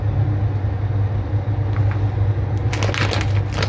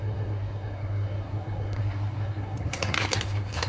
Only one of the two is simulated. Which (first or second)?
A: second